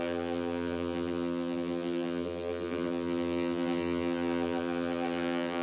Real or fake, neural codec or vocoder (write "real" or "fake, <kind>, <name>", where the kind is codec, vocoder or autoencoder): fake, vocoder, BigVGAN v2